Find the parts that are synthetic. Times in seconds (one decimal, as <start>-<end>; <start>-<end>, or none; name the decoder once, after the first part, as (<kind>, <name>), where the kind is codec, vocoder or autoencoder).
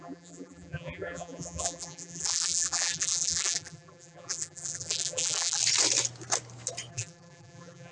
0.0-5.6 (vocoder, BigVGAN v2); 6.9-7.9